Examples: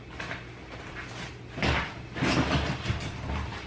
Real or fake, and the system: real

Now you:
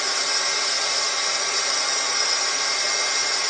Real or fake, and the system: real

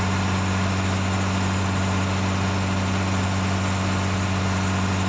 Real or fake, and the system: real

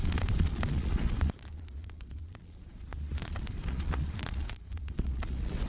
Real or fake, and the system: fake, vocoder, Vocos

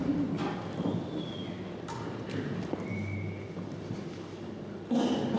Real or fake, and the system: real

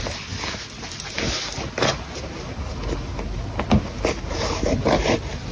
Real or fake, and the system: real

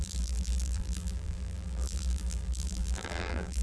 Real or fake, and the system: fake, vocoder, BigVGAN v2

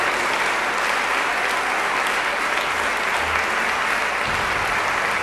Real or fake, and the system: real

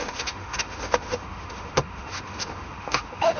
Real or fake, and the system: fake, autoencoder, DAC-VAE